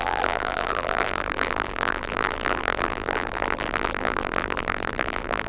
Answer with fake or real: fake